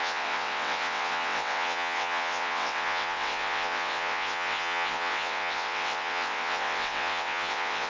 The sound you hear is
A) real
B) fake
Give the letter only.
B